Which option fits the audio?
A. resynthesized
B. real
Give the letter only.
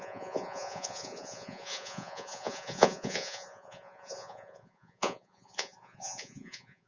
A